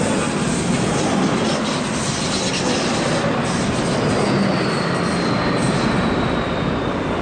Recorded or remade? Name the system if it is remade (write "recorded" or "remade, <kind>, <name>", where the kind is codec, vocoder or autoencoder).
recorded